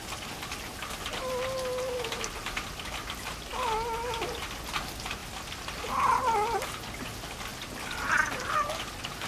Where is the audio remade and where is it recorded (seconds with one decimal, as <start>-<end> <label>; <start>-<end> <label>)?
0.0-9.3 recorded